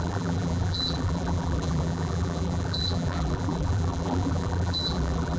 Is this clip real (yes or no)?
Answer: no